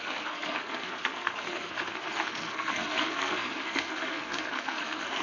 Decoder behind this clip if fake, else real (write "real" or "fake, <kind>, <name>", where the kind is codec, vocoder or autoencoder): fake, codec, SNAC